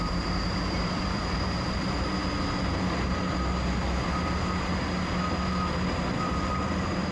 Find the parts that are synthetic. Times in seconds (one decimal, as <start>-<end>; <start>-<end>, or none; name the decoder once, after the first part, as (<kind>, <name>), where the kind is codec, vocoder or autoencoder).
0.0-2.2 (vocoder, BigVGAN v2); 5.8-7.1

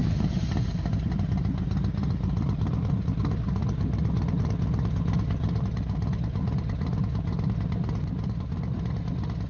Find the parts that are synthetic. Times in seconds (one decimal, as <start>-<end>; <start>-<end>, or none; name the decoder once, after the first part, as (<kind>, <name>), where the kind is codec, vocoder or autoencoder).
0.0-3.2 (vocoder, BigVGAN v2); 3.6-4.5; 5.4-9.1

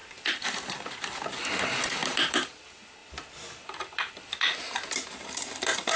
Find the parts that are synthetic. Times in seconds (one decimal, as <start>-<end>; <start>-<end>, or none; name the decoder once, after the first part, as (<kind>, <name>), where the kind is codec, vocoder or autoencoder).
2.0-2.6 (vocoder, BigVGAN v2); 3.0-4.7

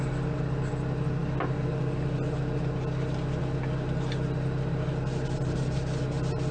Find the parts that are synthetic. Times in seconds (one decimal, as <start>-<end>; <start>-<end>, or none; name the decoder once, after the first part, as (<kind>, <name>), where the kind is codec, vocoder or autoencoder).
none

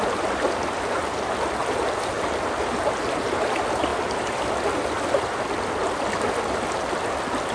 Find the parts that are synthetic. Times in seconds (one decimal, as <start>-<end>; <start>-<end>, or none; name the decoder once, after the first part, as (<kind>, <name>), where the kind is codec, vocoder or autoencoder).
1.0-2.1 (vocoder, BigVGAN v2); 5.8-6.4

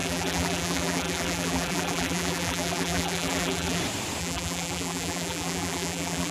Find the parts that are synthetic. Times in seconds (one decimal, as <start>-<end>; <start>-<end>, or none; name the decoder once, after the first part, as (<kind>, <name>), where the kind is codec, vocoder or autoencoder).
0.0-3.8 (vocoder, BigVGAN v2); 4.2-6.3

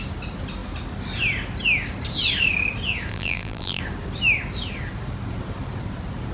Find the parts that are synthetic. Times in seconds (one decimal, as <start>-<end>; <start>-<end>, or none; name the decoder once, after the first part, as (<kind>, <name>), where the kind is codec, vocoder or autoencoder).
3.1-3.8 (vocoder, BigVGAN v2)